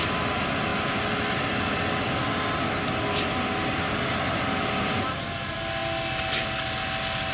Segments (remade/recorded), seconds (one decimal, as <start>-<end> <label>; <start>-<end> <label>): 0.0-7.3 recorded